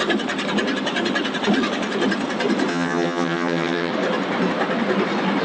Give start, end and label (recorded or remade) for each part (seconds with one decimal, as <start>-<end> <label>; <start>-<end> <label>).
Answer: 0.0-2.7 recorded; 2.7-3.9 remade; 3.9-5.4 recorded